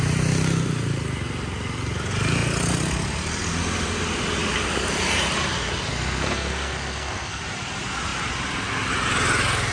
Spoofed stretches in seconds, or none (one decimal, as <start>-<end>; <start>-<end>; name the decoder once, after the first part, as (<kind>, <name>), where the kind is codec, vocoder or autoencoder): 5.9-7.4 (codec, SNAC)